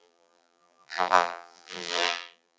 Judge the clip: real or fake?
fake